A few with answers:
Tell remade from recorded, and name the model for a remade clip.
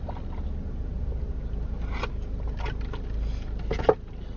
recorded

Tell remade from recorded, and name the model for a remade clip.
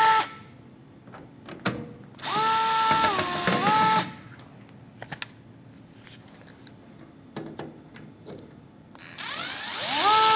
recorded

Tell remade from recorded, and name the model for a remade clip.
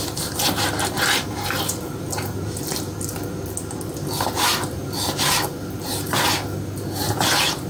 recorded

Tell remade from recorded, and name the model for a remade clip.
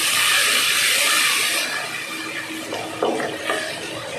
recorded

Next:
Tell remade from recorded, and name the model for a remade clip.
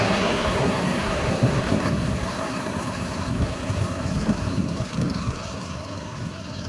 remade, codec, SNAC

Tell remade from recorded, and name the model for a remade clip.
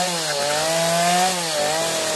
recorded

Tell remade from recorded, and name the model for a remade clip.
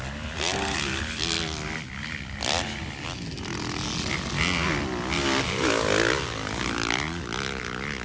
recorded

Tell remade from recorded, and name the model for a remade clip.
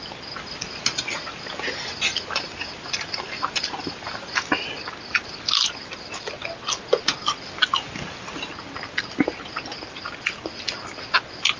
recorded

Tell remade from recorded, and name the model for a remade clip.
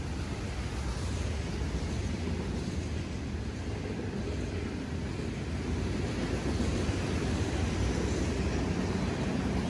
recorded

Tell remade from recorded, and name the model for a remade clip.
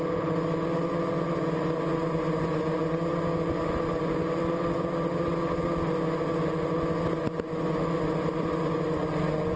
recorded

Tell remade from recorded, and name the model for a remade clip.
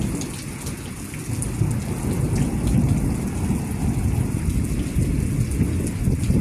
recorded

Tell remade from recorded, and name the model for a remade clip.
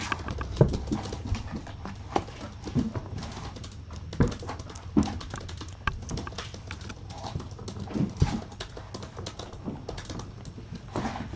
recorded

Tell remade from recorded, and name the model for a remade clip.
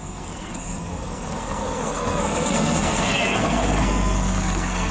remade, codec, SNAC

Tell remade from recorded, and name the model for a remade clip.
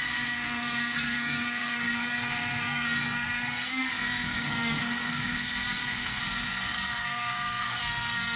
remade, codec, SNAC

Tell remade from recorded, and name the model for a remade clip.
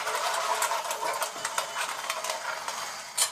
recorded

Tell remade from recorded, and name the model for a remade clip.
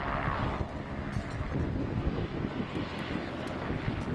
recorded